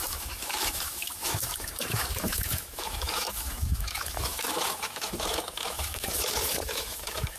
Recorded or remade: remade